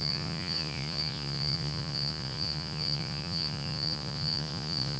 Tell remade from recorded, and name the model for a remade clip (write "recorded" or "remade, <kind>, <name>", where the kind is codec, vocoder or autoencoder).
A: remade, vocoder, Vocos